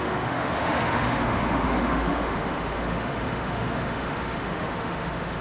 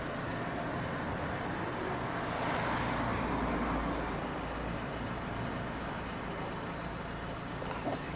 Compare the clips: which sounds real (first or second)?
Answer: second